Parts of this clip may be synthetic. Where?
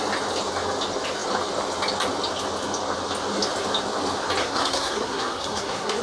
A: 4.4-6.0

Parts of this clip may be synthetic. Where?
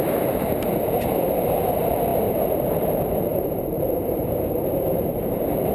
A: 0.0-5.7